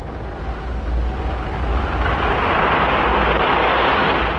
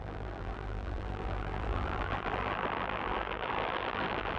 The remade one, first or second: second